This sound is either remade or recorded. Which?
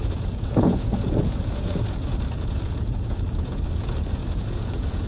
remade